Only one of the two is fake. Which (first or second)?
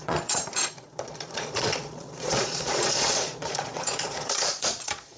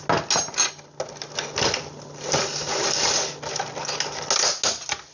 first